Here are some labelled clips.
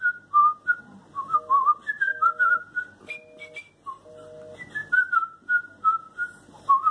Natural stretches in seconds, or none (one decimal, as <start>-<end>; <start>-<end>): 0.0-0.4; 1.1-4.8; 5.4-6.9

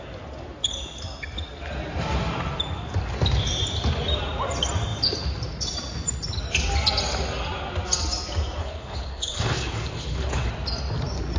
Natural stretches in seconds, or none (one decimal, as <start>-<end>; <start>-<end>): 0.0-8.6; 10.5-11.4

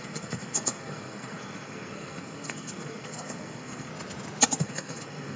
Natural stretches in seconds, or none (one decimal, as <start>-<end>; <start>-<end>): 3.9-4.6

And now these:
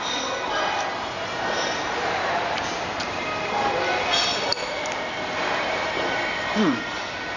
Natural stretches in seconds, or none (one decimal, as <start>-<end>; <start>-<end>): 0.0-0.9; 3.2-4.5; 7.0-7.4

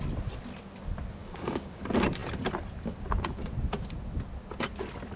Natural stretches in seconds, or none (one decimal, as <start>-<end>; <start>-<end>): 0.0-1.2; 1.8-5.2